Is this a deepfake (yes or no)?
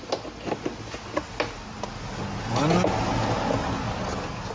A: no